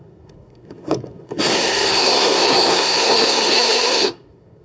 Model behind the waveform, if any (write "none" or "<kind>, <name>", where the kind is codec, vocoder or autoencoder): codec, SNAC